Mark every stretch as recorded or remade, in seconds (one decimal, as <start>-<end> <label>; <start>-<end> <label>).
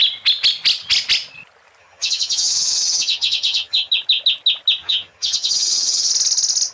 0.0-1.8 recorded; 1.8-3.9 remade; 3.9-4.8 recorded; 4.8-6.1 remade; 6.1-6.7 recorded